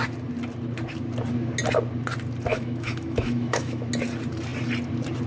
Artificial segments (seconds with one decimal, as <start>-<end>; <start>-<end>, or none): 2.5-3.9